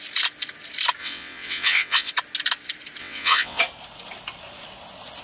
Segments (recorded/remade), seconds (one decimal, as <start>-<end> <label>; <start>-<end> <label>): 0.0-1.0 recorded; 1.0-2.1 remade; 2.1-3.0 recorded; 3.0-3.6 remade; 3.6-5.2 recorded